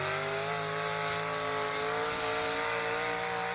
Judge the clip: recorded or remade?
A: recorded